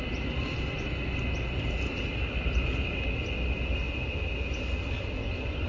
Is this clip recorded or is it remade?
recorded